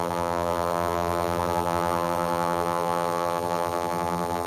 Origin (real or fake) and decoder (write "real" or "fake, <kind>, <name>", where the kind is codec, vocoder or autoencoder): fake, vocoder, BigVGAN v2